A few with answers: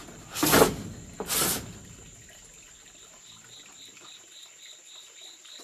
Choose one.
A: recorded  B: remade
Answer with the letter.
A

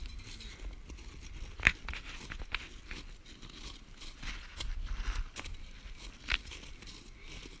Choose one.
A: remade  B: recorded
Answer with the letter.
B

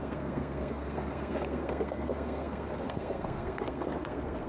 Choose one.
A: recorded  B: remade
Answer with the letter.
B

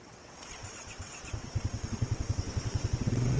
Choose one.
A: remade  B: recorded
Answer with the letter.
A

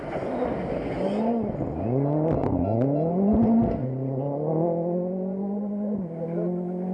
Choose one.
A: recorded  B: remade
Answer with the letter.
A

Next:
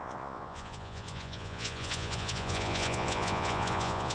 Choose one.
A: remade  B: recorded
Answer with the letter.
A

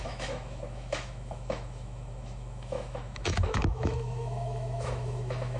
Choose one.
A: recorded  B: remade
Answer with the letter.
B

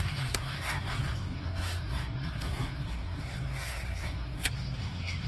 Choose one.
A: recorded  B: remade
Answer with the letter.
B